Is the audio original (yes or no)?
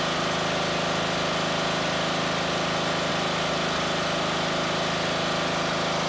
yes